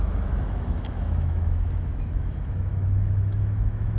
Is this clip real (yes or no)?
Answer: no